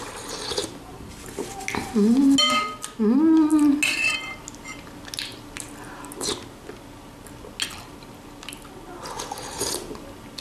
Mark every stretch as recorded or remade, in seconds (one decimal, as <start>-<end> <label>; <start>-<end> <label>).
0.0-0.6 recorded; 0.6-1.5 remade; 1.5-10.4 recorded